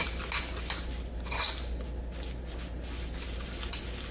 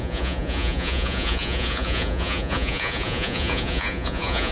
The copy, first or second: second